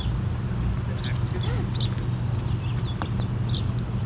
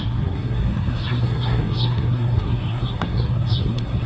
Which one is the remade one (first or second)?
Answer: second